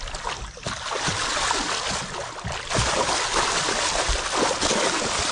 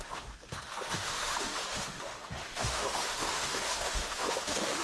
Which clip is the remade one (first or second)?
second